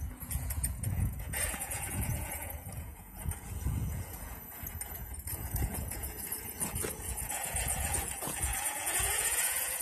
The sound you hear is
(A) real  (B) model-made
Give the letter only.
B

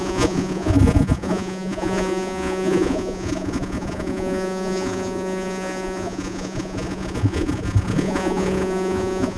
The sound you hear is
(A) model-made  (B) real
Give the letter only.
A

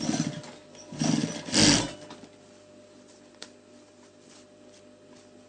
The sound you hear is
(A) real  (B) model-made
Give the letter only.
A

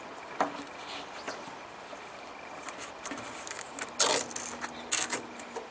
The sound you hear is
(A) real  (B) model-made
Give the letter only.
A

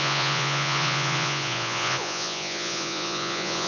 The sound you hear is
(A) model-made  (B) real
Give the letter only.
A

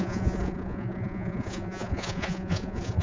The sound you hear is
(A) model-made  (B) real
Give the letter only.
A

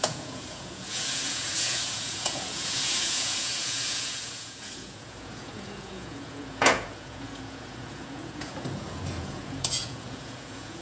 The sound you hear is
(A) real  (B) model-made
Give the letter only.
B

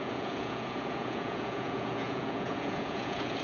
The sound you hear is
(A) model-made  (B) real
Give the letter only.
A